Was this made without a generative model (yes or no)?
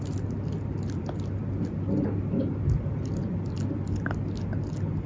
yes